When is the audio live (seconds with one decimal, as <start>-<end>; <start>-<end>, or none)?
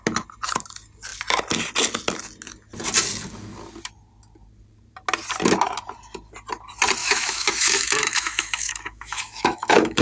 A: 0.0-7.0